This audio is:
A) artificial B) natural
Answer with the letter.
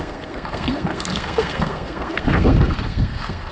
A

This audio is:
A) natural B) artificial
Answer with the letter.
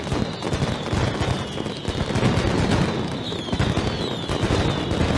A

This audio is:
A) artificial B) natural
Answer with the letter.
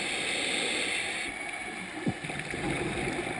B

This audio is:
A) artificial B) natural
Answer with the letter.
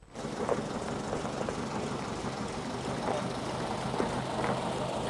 B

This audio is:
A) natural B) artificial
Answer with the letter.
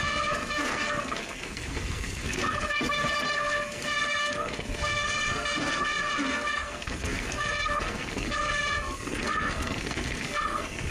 B